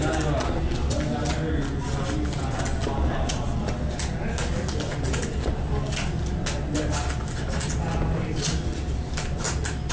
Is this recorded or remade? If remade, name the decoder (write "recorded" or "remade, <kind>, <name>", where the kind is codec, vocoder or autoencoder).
recorded